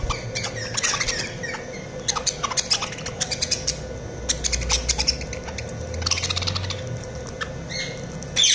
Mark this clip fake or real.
real